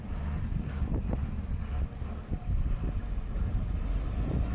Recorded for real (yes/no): yes